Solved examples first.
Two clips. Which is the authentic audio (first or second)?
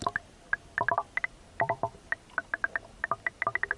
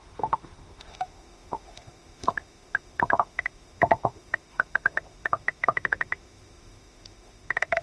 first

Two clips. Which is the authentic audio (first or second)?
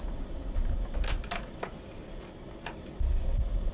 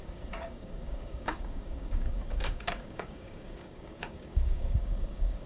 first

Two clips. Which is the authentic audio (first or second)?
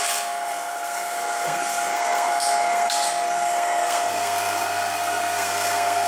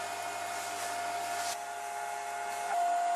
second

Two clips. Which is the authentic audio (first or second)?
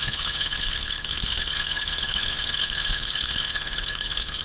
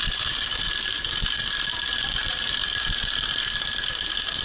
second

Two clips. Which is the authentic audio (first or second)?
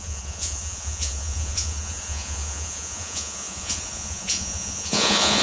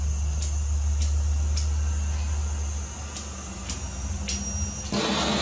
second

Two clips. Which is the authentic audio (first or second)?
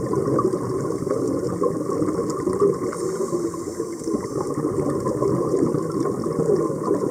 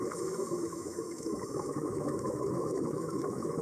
first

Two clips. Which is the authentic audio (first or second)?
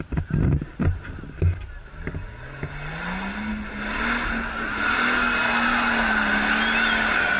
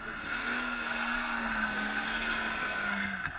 first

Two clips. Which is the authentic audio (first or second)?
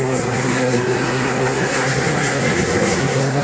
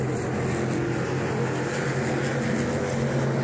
second